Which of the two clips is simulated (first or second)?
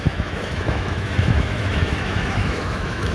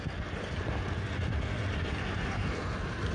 first